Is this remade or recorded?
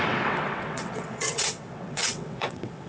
remade